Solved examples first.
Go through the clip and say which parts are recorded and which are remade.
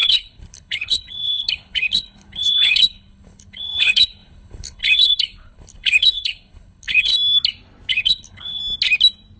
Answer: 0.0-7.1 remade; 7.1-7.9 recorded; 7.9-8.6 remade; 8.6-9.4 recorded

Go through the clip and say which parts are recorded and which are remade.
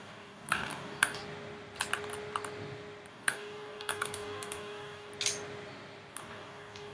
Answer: 0.0-1.2 remade; 1.2-3.1 recorded; 3.1-5.1 remade; 5.1-6.1 recorded; 6.1-6.9 remade